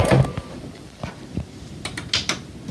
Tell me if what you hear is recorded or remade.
recorded